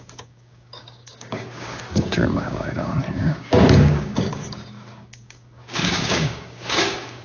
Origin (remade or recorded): remade